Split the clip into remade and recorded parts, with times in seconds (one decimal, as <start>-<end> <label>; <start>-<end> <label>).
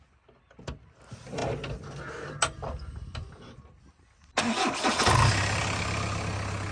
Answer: 0.0-6.7 recorded